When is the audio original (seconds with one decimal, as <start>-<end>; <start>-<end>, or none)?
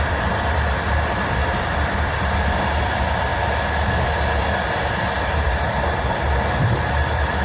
3.3-4.9